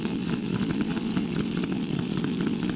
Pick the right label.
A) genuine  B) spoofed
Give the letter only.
B